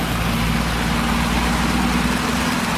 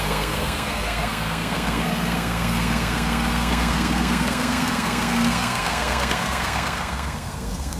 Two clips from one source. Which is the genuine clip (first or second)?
first